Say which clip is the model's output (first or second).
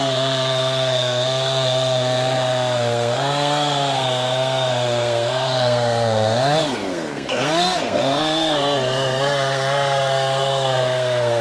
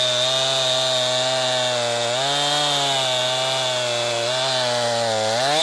first